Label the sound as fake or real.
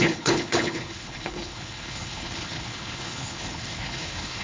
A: fake